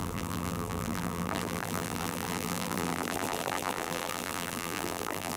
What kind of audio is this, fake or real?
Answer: fake